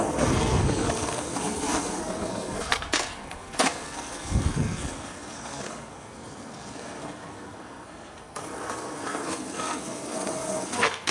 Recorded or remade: remade